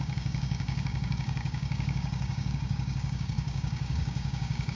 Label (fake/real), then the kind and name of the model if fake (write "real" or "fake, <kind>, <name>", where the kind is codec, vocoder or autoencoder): fake, codec, DAC